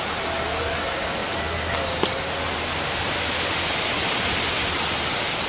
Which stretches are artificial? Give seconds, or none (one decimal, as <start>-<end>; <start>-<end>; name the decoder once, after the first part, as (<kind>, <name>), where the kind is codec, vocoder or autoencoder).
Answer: none